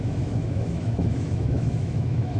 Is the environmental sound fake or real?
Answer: fake